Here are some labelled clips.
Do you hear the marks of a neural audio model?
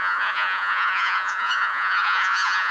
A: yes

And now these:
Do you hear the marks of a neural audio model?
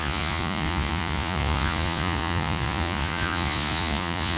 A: yes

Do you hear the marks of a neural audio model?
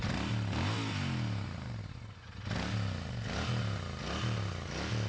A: no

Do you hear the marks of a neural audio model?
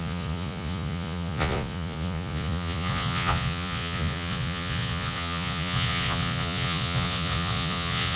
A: yes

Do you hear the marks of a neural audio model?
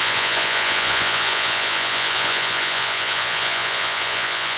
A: yes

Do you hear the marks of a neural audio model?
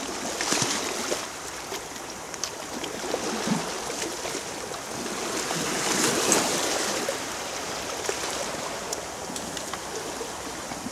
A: no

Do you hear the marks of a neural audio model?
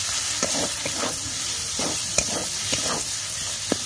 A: no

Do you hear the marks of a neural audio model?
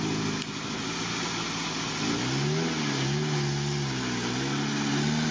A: no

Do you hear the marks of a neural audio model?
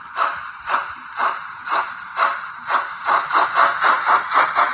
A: no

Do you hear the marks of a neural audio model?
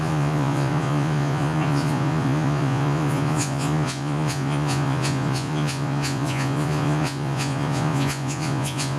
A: yes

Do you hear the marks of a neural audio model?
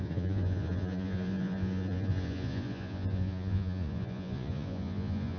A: yes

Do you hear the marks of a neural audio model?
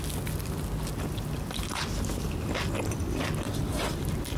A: no